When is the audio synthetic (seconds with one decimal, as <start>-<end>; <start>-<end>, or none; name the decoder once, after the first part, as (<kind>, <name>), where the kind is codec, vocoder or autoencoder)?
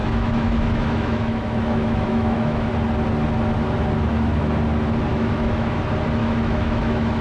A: 0.0-2.7 (autoencoder, DAC-VAE); 5.1-5.8; 6.2-7.2